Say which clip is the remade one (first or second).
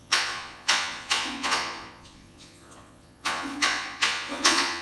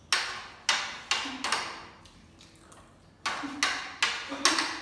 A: first